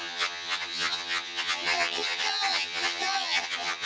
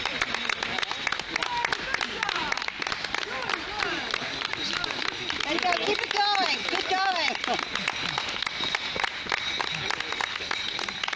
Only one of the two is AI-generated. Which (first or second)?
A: first